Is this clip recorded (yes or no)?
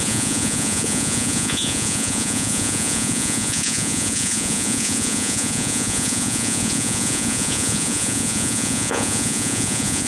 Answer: no